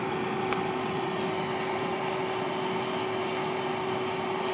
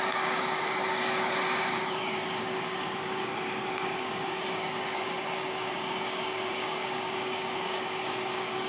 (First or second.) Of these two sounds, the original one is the first